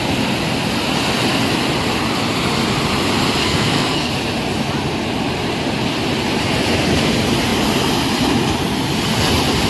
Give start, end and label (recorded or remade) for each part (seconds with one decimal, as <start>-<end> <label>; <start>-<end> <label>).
0.0-3.4 recorded; 3.4-4.1 remade; 4.1-9.7 recorded